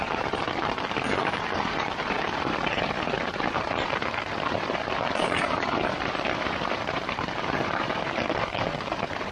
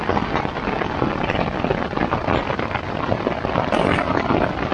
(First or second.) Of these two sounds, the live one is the second